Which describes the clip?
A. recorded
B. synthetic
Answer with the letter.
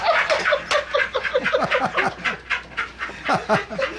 A